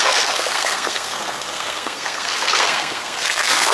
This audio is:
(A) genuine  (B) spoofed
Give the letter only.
B